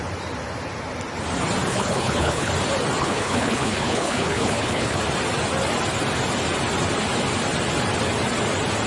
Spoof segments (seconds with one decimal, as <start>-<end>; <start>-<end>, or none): 1.7-2.5; 3.0-5.0